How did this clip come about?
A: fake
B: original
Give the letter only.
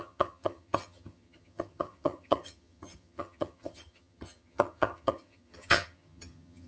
A